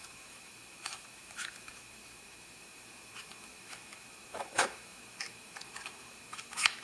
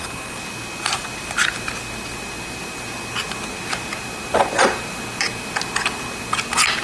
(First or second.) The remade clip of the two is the first